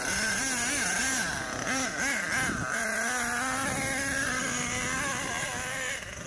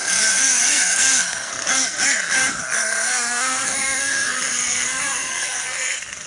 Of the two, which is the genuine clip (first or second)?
first